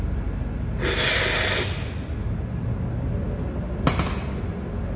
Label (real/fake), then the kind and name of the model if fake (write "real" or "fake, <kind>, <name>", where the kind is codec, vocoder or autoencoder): real